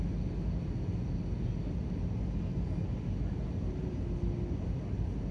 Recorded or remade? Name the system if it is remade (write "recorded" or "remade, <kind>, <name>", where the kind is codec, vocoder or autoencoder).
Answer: recorded